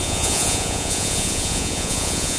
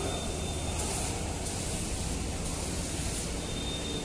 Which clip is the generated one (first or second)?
first